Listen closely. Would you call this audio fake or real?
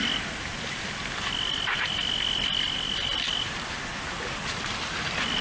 real